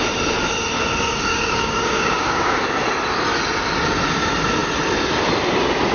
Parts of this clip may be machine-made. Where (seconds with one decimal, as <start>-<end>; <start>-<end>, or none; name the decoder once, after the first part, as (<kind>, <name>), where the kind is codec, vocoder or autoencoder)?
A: 1.3-2.6 (codec, DAC)